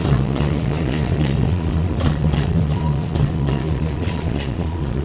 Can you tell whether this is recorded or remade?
remade